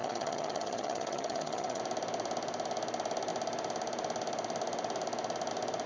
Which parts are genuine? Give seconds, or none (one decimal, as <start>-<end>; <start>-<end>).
1.8-5.9